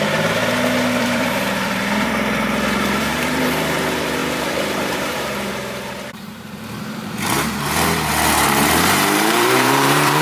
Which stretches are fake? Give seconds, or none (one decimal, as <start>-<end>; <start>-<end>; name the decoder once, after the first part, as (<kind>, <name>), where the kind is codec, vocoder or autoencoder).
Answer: 0.0-0.4 (vocoder, BigVGAN v2); 1.0-10.2